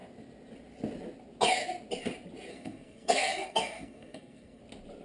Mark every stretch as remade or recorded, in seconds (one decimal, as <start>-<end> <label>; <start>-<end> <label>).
0.0-2.5 recorded; 2.5-4.6 remade; 4.6-5.0 recorded